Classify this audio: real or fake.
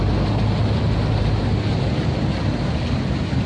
real